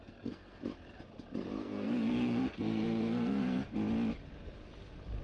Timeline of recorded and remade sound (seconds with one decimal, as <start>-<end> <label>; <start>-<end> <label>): 0.0-0.6 remade; 0.6-1.6 recorded; 1.6-3.7 remade; 3.7-5.2 recorded